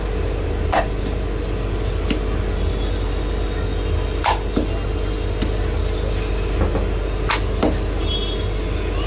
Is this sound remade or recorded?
recorded